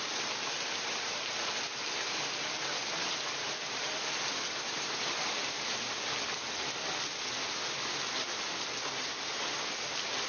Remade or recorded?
recorded